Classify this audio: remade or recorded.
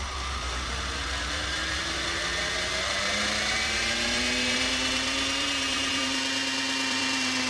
remade